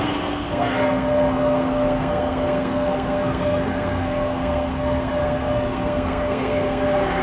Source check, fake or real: fake